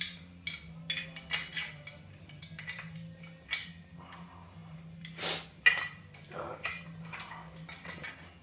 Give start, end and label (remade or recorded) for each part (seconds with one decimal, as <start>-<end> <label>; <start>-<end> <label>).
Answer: 0.0-8.4 recorded